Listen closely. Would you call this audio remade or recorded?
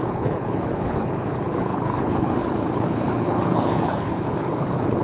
remade